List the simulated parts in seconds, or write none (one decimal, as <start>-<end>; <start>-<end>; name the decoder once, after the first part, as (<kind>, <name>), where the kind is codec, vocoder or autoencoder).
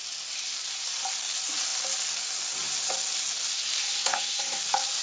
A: 3.8-4.6 (codec, SNAC)